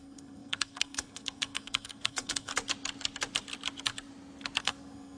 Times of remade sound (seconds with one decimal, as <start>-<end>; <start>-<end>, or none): 0.0-2.5; 4.6-5.2